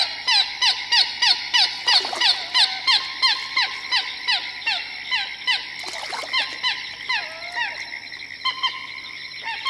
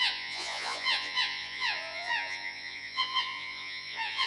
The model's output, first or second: second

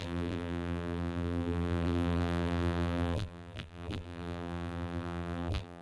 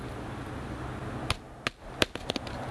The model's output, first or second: first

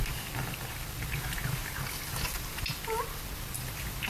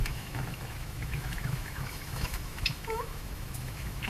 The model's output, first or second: second